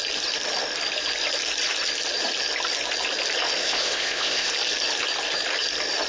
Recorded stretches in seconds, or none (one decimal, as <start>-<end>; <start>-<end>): 0.0-3.6; 4.5-6.1